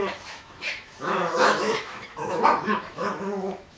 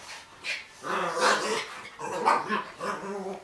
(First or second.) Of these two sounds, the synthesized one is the first